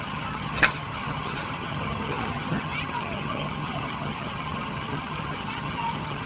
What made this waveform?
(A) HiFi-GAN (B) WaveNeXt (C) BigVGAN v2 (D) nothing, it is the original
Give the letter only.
A